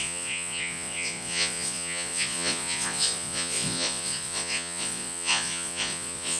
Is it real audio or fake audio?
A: fake